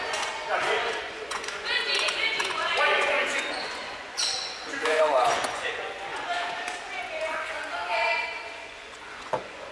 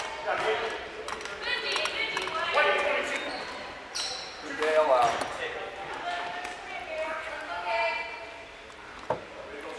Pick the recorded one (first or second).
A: second